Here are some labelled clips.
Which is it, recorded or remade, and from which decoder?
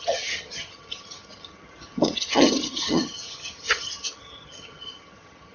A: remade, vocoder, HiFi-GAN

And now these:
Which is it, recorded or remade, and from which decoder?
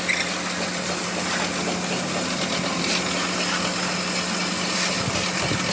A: recorded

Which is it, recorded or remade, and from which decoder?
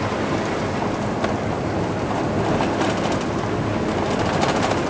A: recorded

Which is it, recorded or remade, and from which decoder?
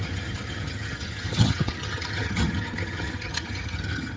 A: remade, vocoder, HiFi-GAN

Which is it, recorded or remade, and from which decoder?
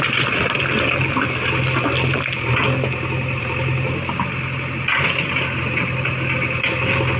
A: recorded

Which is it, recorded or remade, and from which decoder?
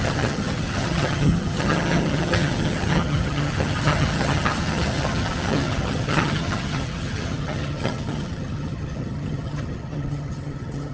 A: remade, vocoder, HiFi-GAN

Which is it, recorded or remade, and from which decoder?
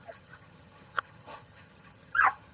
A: remade, vocoder, HiFi-GAN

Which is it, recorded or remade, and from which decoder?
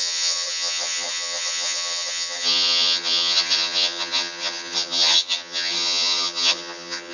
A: remade, vocoder, HiFi-GAN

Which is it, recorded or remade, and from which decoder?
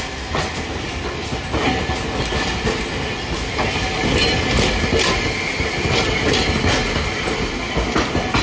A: recorded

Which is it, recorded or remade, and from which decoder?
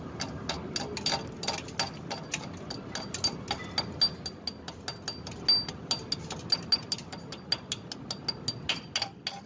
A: recorded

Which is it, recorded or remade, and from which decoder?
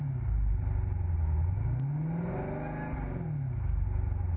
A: recorded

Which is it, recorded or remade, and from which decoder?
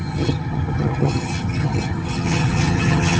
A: remade, vocoder, HiFi-GAN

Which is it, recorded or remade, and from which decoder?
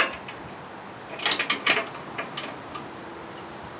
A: recorded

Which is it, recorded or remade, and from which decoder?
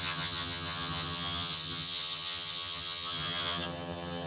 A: remade, vocoder, HiFi-GAN